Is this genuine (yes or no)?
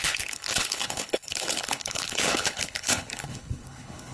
no